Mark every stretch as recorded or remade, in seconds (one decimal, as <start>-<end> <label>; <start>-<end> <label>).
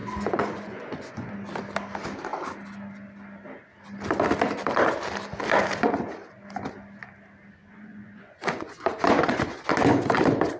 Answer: 0.0-1.3 remade; 1.3-7.6 recorded; 7.6-9.7 remade; 9.7-10.6 recorded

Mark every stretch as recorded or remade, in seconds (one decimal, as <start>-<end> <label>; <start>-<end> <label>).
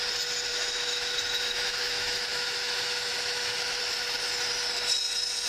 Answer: 0.0-0.5 recorded; 0.5-3.8 remade; 3.8-5.5 recorded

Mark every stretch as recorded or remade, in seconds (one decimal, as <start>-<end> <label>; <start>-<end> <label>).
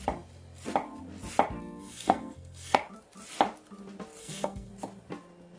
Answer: 0.0-1.6 recorded; 1.6-2.8 remade; 2.8-4.2 recorded; 4.2-4.7 remade; 4.7-5.6 recorded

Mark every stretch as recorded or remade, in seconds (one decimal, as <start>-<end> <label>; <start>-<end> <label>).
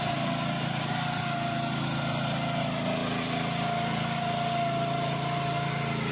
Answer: 0.0-6.1 recorded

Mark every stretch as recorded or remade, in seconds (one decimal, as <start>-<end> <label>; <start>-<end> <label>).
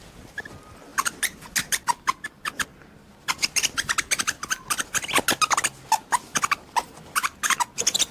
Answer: 0.0-8.1 recorded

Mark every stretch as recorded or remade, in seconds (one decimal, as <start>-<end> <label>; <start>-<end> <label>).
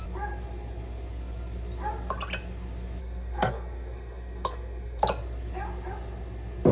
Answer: 0.0-3.0 recorded; 3.0-5.0 remade; 5.0-6.7 recorded